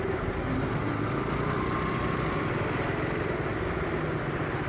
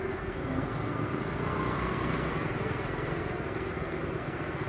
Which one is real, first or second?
first